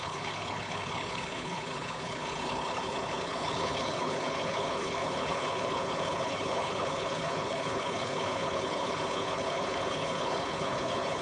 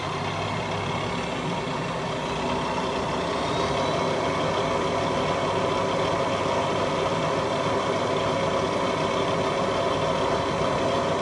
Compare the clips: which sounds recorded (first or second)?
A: second